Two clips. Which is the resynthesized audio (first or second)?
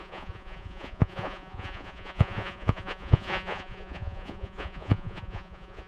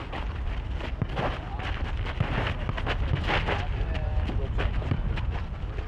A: first